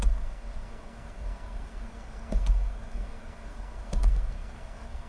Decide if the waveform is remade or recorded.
remade